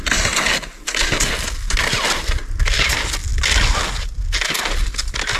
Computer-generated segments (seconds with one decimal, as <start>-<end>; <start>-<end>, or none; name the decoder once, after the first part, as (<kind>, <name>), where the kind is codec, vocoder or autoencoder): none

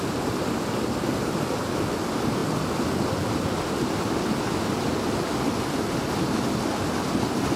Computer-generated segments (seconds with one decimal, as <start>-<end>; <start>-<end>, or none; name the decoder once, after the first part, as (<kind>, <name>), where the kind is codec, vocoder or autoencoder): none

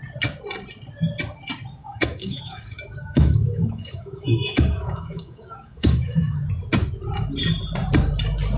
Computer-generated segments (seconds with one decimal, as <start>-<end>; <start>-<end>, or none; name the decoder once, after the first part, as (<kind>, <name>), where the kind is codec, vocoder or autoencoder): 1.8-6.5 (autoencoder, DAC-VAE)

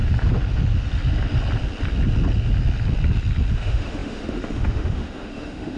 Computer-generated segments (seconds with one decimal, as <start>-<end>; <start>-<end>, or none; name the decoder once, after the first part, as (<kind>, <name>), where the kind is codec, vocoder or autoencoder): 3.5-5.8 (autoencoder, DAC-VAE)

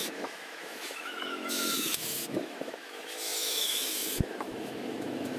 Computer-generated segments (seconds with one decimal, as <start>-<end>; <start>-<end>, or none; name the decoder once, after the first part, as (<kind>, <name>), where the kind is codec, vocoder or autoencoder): 0.0-5.4 (autoencoder, DAC-VAE)

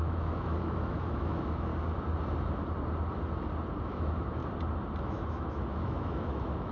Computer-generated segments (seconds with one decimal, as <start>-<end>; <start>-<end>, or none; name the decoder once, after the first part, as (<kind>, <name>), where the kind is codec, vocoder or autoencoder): 0.0-1.7 (autoencoder, DAC-VAE); 3.8-4.4; 5.0-6.7